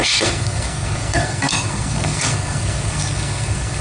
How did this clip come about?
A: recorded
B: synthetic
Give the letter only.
B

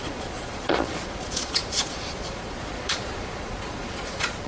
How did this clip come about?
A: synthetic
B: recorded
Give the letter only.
A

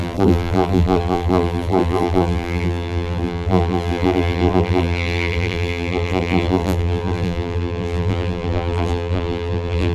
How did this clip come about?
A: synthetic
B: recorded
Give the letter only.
A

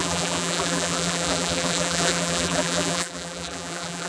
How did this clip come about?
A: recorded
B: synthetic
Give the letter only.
B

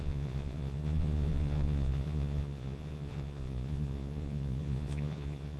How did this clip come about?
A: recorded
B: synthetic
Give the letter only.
B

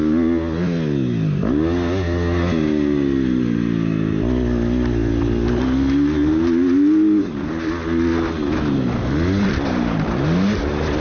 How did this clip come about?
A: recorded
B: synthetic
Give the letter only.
A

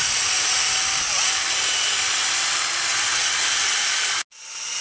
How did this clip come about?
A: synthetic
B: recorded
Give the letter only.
B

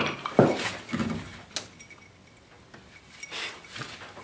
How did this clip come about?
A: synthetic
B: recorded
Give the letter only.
B